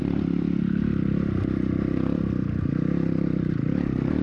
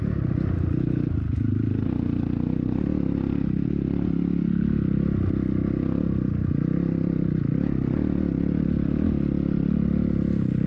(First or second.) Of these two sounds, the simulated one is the first